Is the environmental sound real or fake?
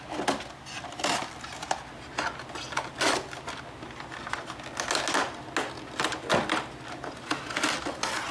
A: real